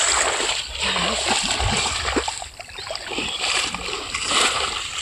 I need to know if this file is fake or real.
fake